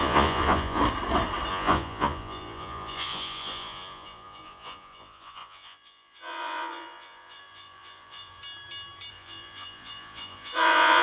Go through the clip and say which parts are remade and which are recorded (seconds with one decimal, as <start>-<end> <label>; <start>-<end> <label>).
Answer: 0.0-0.8 remade; 0.8-1.5 recorded; 1.5-8.4 remade; 8.4-9.1 recorded; 9.1-11.0 remade